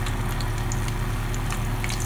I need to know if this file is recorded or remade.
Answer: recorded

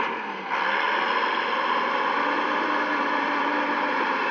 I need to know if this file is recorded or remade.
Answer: recorded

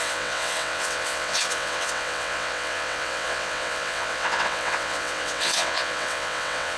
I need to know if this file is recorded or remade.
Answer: remade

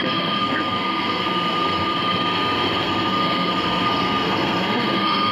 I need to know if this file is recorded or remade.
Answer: remade